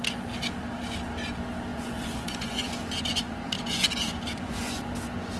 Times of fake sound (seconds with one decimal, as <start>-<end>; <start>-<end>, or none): 1.7-4.9